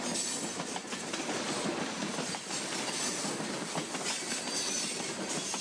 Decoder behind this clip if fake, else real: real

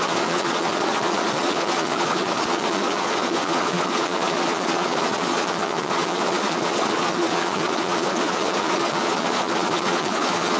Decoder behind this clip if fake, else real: fake, vocoder, Vocos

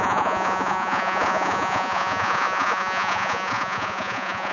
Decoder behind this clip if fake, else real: fake, vocoder, Vocos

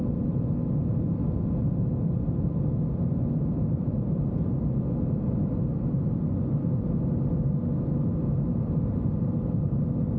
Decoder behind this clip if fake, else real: real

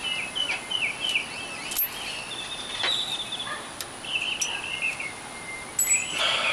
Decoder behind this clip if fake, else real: real